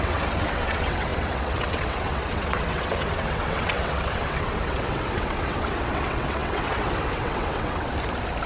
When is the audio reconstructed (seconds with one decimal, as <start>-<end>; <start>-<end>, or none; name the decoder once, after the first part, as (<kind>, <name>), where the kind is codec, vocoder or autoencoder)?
0.0-7.9 (vocoder, WaveNeXt)